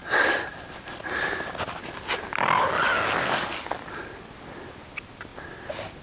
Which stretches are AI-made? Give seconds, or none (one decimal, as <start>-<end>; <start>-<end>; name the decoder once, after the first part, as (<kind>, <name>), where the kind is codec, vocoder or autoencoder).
none